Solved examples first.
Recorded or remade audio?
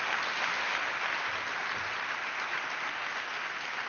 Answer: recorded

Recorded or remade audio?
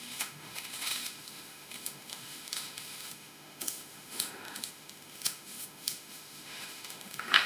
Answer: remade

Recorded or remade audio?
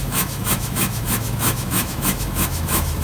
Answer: remade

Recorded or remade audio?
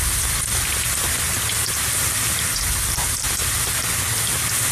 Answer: recorded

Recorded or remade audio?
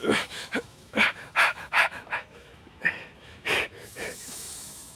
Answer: remade